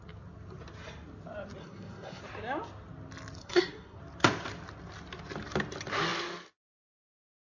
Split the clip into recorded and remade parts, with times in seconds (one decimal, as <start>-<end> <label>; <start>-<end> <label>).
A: 0.0-1.6 recorded; 1.6-2.2 remade; 2.2-3.4 recorded; 3.4-4.0 remade; 4.0-7.5 recorded